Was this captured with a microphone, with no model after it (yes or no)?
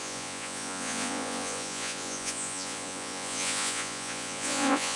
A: no